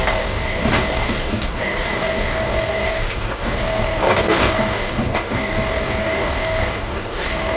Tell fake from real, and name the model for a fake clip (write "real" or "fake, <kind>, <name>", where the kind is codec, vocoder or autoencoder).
fake, codec, DAC